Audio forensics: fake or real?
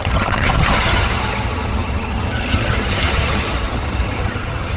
fake